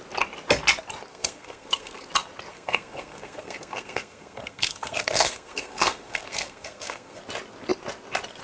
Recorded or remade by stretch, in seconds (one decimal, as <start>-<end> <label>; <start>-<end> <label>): 0.0-1.1 recorded; 1.1-2.1 remade; 2.1-2.5 recorded; 2.5-7.2 remade; 7.2-8.4 recorded